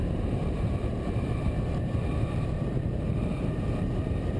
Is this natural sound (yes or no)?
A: no